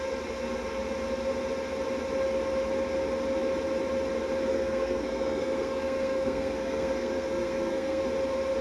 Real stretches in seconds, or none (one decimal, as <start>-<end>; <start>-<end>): 0.0-4.5; 8.0-8.6